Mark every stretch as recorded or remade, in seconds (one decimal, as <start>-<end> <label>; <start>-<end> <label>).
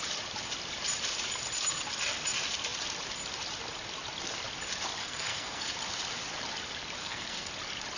0.0-5.0 recorded; 5.0-5.7 remade; 5.7-7.0 recorded; 7.0-7.5 remade; 7.5-8.0 recorded